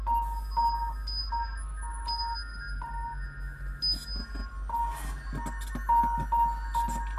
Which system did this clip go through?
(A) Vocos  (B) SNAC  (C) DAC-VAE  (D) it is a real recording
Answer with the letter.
D